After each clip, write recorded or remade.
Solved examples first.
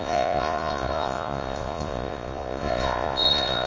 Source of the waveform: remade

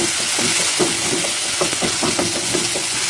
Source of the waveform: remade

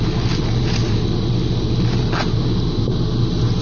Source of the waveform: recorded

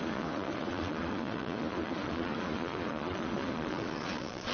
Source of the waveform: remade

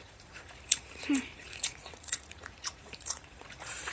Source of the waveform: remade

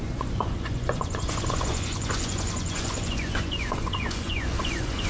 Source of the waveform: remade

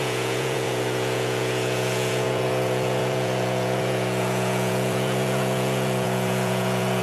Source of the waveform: remade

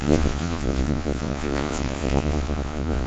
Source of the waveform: remade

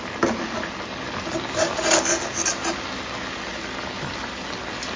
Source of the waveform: recorded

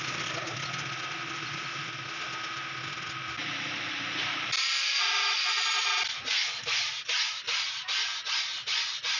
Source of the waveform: recorded